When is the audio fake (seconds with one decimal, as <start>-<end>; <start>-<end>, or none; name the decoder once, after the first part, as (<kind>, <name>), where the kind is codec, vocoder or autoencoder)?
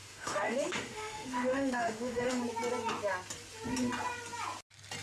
0.0-2.4 (autoencoder, DAC-VAE)